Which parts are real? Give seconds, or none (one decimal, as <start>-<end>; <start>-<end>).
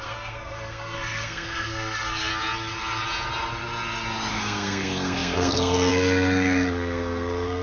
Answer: 2.3-4.3